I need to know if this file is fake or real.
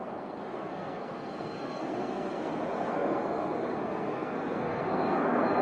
fake